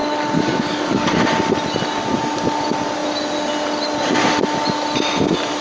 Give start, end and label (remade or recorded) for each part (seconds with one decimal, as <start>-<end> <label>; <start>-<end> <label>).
0.0-1.2 remade; 1.2-5.6 recorded